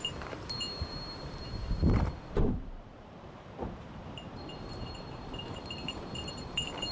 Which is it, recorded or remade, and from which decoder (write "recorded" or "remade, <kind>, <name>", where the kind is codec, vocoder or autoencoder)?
remade, vocoder, BigVGAN v2